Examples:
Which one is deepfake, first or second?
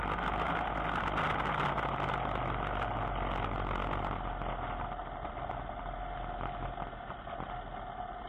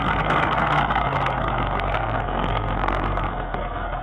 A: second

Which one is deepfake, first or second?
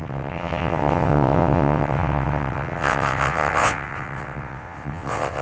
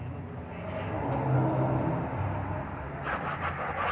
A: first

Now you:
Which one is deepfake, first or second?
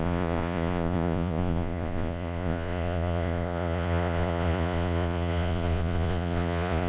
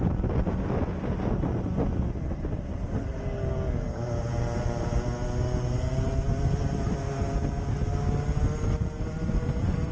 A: first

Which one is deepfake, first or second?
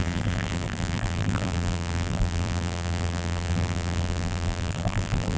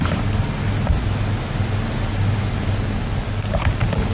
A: first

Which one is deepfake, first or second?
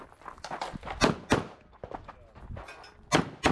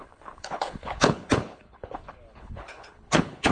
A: second